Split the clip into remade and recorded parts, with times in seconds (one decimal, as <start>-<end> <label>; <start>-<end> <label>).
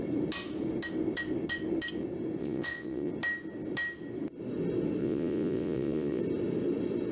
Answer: 0.0-2.4 recorded; 2.4-3.1 remade; 3.1-5.0 recorded; 5.0-6.2 remade; 6.2-7.1 recorded